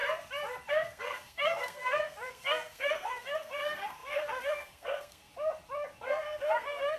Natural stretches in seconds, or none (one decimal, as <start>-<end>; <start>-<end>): 0.0-0.7; 5.3-6.0

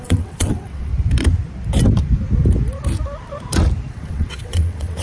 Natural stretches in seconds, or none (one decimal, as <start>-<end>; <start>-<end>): 0.9-3.9